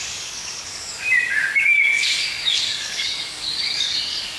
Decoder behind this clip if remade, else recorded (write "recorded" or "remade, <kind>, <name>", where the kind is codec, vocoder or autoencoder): remade, codec, DAC